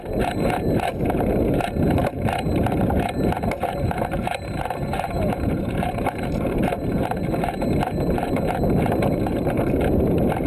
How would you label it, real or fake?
fake